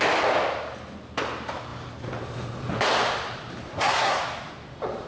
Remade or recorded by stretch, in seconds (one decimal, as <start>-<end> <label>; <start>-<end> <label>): 0.0-3.7 recorded; 3.7-4.2 remade; 4.2-5.1 recorded

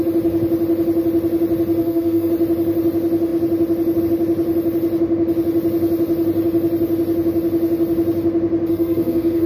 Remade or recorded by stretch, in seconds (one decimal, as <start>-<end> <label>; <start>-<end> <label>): 0.0-1.8 recorded; 1.8-2.3 remade; 2.3-8.7 recorded; 8.7-9.5 remade

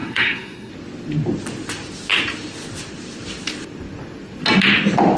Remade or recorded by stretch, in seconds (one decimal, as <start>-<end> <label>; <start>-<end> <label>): 0.0-0.7 remade; 0.7-5.2 recorded